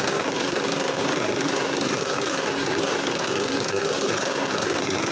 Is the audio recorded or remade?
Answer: remade